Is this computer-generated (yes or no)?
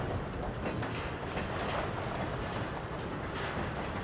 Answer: no